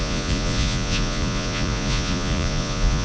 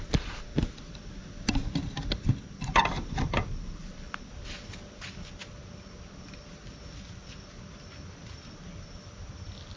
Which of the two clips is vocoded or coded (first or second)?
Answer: first